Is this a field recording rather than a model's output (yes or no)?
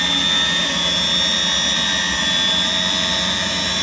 yes